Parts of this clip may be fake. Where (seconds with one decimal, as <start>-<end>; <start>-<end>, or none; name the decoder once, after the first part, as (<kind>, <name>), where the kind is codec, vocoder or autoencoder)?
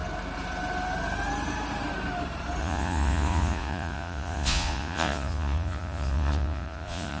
2.6-7.2 (vocoder, Vocos)